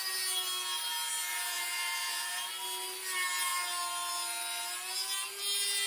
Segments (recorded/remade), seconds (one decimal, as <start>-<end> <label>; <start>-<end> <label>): 0.0-1.3 recorded; 1.3-2.5 remade; 2.5-5.9 recorded